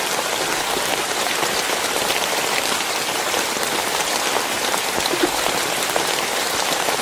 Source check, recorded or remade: remade